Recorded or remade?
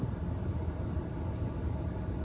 recorded